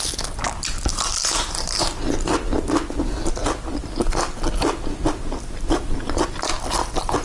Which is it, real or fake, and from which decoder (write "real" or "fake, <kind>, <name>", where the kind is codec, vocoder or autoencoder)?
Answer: real